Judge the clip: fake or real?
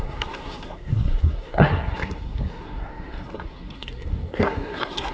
fake